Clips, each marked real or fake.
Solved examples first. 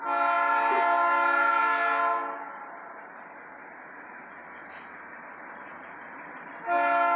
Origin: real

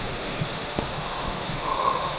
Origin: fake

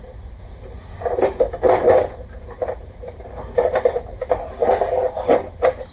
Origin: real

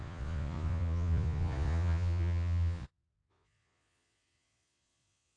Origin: fake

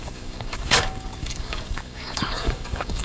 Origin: fake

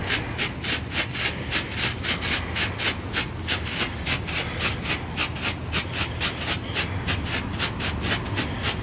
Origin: real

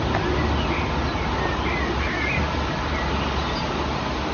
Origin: real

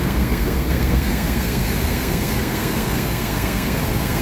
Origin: fake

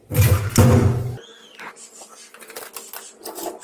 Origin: real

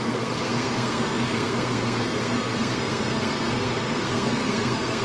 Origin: fake